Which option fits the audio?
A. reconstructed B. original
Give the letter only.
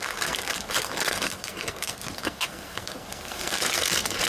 A